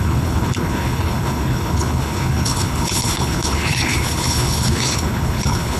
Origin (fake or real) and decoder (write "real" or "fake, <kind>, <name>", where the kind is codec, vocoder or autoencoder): fake, codec, HILCodec